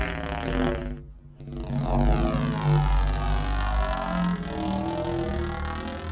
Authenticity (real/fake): real